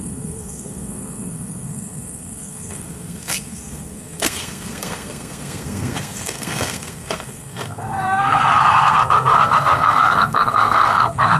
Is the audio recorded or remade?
remade